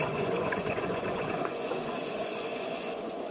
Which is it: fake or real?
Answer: fake